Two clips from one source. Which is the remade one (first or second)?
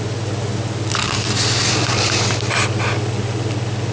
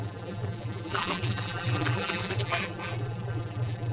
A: second